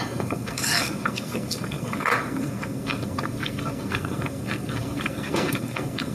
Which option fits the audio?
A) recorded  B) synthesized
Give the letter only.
B